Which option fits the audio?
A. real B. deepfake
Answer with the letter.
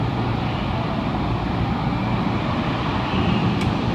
A